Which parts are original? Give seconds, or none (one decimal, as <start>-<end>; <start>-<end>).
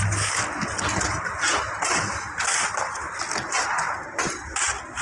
0.0-5.0